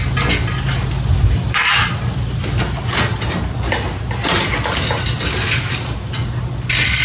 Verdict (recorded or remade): recorded